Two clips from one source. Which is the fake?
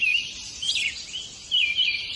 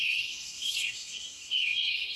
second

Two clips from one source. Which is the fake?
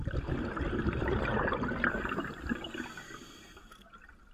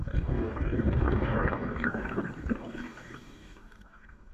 second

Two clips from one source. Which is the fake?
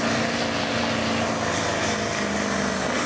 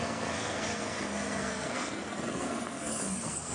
second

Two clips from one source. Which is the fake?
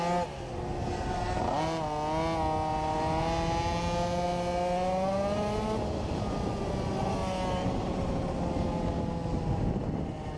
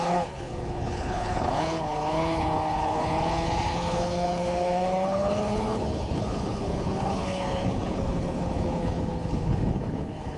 second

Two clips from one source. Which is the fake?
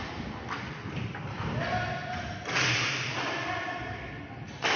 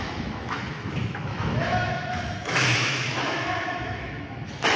second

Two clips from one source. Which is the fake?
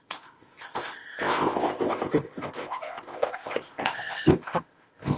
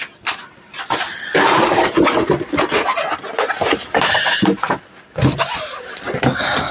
first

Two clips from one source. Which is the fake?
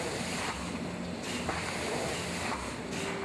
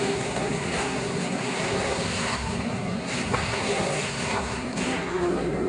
second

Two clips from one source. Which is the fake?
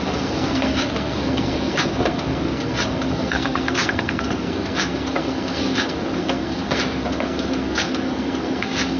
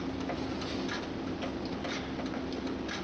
first